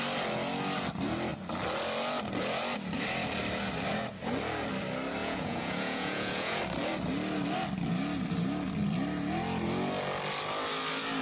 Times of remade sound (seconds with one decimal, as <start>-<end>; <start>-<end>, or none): 5.2-6.6